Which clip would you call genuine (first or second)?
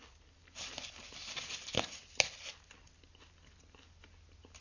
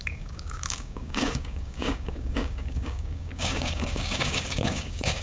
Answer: first